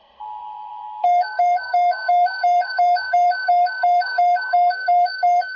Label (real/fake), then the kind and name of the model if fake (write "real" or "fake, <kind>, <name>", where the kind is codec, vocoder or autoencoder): fake, codec, SNAC